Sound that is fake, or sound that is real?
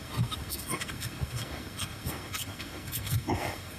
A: fake